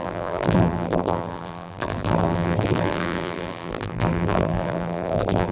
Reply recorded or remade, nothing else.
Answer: remade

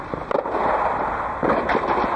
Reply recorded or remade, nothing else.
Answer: recorded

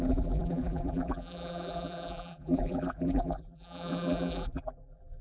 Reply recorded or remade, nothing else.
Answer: remade